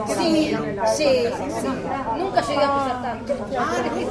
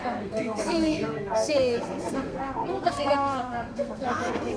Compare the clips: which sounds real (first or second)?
first